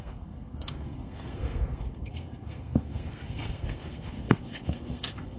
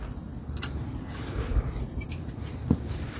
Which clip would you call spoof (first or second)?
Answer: first